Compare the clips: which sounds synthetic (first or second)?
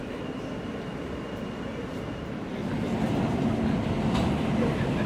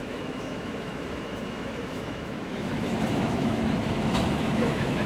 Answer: second